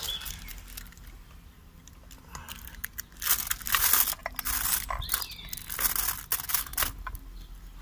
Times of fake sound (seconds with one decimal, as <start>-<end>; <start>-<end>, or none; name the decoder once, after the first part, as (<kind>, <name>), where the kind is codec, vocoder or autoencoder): 0.5-1.9 (vocoder, BigVGAN v2)